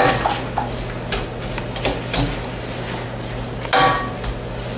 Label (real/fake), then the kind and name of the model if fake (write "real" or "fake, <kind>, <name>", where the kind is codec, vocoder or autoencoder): real